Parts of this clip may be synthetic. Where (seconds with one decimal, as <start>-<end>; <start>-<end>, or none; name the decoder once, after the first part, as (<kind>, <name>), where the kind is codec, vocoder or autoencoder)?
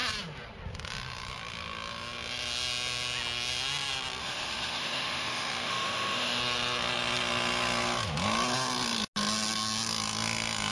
4.2-6.4 (autoencoder, DAC-VAE)